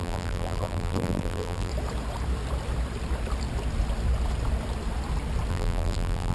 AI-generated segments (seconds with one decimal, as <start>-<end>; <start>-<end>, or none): 0.0-1.7; 5.5-6.3